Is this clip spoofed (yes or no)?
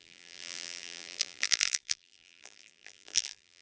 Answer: yes